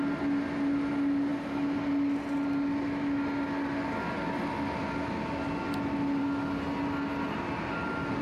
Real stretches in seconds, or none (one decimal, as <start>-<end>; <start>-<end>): 0.0-8.2